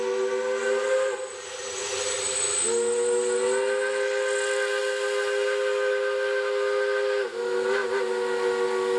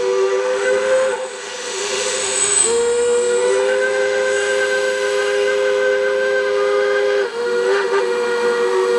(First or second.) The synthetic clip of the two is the second